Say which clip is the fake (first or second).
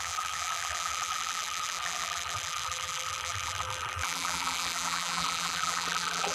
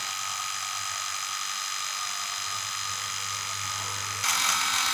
first